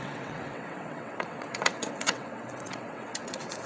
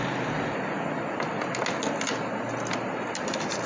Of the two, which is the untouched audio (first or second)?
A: second